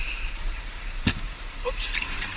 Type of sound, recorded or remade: remade